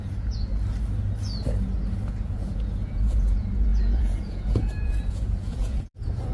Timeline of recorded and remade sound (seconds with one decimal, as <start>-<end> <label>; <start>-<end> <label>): 0.0-0.5 remade; 0.5-2.1 recorded; 2.1-6.3 remade